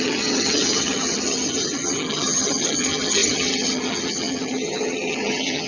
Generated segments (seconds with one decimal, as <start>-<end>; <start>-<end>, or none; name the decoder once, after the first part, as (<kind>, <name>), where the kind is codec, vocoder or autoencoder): 0.0-5.7 (vocoder, HiFi-GAN)